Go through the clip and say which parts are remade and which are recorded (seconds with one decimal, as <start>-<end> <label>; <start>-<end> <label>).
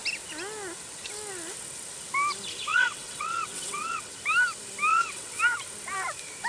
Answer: 0.0-2.7 recorded; 2.7-4.1 remade; 4.1-4.9 recorded; 4.9-5.4 remade; 5.4-6.5 recorded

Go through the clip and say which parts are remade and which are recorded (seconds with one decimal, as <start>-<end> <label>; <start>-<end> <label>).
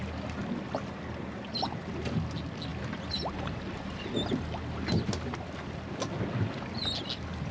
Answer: 0.0-2.7 recorded; 2.7-4.0 remade; 4.0-7.5 recorded